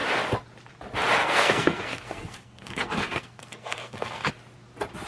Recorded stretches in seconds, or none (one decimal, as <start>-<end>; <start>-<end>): 0.0-1.2; 4.3-5.1